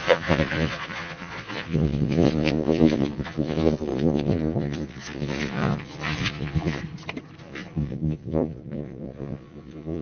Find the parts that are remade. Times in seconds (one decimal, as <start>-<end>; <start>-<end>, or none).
0.0-6.8; 7.4-10.0